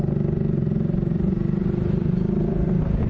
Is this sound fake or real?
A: real